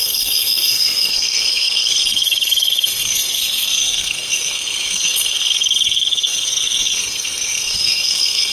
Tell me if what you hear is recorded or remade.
remade